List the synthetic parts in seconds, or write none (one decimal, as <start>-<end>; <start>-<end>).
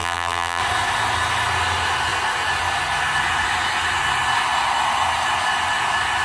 0.0-0.6